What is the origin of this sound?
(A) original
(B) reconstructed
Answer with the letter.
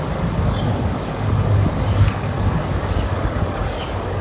B